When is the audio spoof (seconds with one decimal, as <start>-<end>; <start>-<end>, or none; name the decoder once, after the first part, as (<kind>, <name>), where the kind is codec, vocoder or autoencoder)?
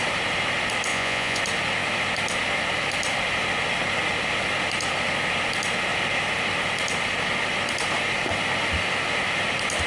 0.9-1.4 (vocoder, Vocos)